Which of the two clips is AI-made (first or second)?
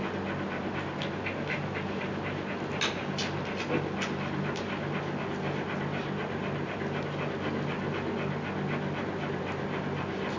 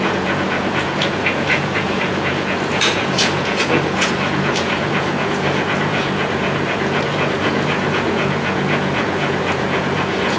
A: second